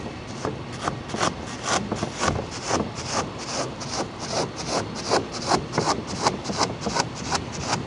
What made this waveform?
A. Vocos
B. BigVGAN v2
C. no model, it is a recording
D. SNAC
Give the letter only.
C